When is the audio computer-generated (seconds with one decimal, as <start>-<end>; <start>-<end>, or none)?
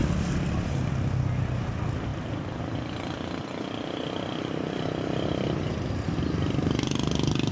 2.1-2.6